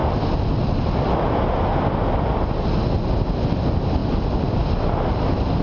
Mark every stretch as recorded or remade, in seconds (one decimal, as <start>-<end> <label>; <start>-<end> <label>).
0.0-5.6 recorded